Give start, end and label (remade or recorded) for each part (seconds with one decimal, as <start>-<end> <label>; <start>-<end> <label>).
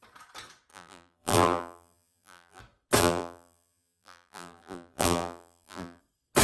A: 0.0-0.7 recorded; 0.7-2.6 remade; 2.6-3.0 recorded; 3.0-6.0 remade; 6.0-6.4 recorded